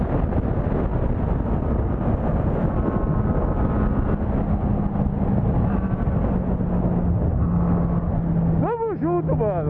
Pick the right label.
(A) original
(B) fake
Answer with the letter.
A